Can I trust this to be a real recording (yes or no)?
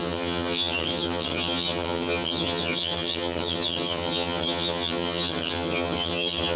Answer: no